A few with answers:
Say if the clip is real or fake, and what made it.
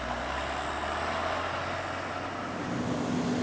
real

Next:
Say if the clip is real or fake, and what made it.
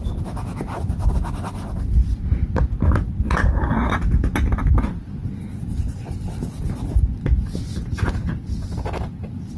real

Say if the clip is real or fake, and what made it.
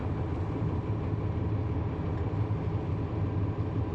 real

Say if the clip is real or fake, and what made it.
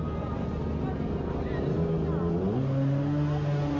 real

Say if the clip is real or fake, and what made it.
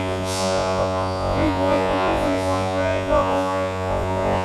fake, vocoder, Vocos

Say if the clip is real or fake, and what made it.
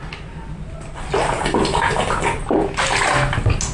real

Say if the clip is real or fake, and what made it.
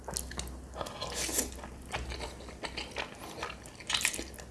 real